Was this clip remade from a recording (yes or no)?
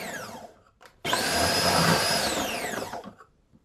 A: yes